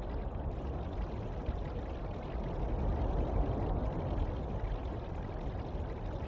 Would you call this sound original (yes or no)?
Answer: yes